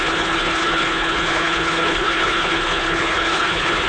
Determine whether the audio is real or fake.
fake